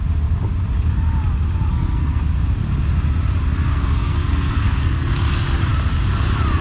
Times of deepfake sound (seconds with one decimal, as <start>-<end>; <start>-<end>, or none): 1.7-2.2; 3.7-5.1